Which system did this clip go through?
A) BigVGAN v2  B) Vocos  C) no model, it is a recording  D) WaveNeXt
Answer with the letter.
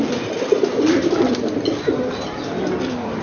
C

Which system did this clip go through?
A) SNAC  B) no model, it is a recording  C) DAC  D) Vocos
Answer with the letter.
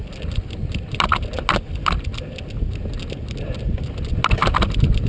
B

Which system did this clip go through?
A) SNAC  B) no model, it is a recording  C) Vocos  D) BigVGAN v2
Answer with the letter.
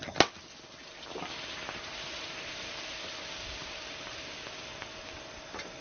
B